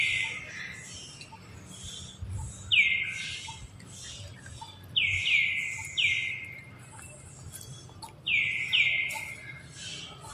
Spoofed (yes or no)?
no